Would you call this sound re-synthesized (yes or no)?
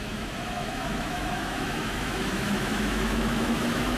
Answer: yes